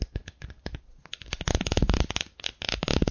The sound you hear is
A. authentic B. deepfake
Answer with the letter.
A